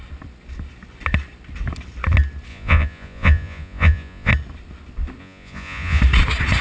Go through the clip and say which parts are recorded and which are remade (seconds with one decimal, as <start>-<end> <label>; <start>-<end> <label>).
0.0-2.5 recorded; 2.5-4.3 remade; 4.3-5.2 recorded; 5.2-6.0 remade; 6.0-6.6 recorded